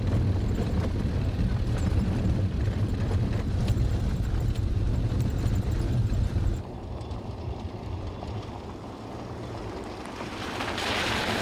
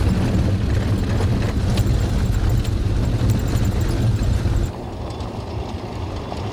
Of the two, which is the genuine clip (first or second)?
second